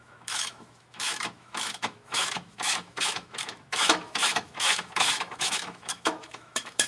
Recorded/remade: remade